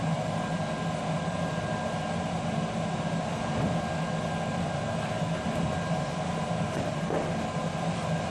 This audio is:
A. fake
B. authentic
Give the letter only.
B